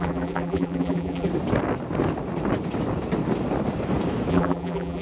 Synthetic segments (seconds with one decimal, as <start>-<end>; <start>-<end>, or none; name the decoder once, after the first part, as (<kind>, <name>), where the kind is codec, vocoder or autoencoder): 0.0-1.3 (vocoder, BigVGAN v2); 4.3-5.0